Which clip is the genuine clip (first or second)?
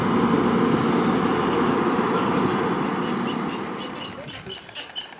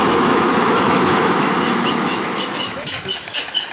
first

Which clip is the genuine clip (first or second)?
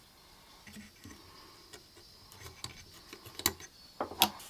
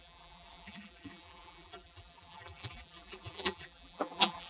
first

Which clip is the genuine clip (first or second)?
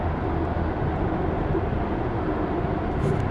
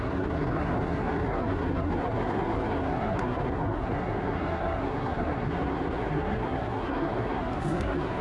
first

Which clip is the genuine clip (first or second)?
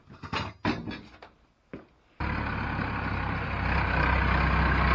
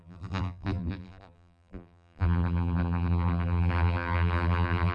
first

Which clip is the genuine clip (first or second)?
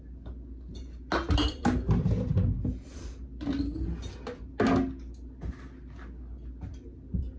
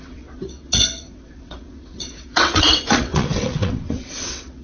first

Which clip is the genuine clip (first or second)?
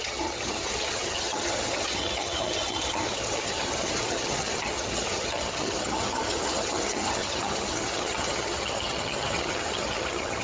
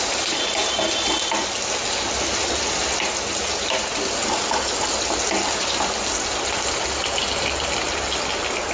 second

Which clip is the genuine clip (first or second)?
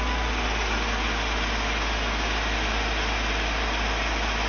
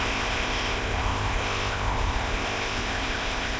first